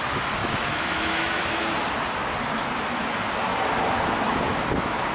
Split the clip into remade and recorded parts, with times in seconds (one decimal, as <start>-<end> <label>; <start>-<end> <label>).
0.0-0.4 recorded; 0.4-1.4 remade; 1.4-5.1 recorded